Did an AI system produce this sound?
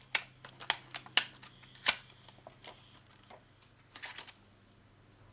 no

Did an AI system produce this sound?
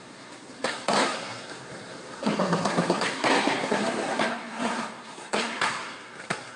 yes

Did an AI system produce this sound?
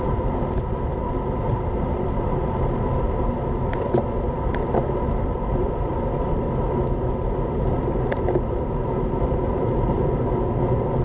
no